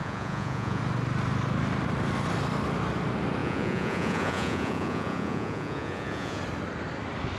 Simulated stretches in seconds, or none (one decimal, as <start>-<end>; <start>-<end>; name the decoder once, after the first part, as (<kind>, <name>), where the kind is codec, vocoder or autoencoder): 0.0-0.8 (vocoder, Vocos); 3.4-6.4